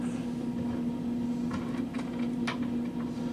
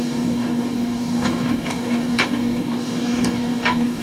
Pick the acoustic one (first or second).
first